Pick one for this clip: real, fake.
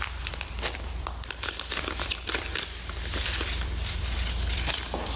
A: fake